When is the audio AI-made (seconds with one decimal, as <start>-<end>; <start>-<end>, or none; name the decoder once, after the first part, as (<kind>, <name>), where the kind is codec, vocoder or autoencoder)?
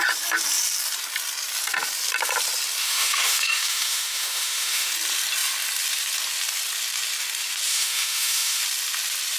2.8-4.9 (autoencoder, DAC-VAE); 7.7-8.6